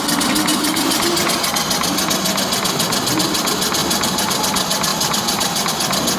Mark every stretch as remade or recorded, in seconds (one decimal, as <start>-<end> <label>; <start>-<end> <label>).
0.0-0.5 recorded; 0.5-1.0 remade; 1.0-3.8 recorded; 3.8-4.4 remade; 4.4-4.9 recorded; 4.9-5.7 remade; 5.7-6.2 recorded